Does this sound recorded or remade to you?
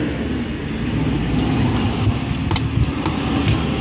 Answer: recorded